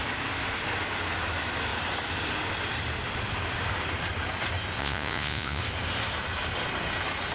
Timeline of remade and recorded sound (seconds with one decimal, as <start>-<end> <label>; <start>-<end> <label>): 0.0-4.8 recorded; 4.8-5.6 remade; 5.6-7.3 recorded